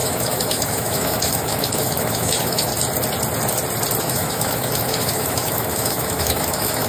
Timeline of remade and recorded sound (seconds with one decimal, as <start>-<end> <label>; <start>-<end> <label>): 0.0-2.7 remade; 2.7-4.0 recorded; 4.0-6.9 remade